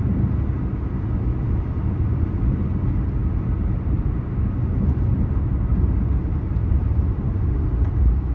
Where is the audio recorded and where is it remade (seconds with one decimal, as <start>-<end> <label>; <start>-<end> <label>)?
0.0-3.2 recorded; 3.2-4.2 remade; 4.2-5.7 recorded; 5.7-8.3 remade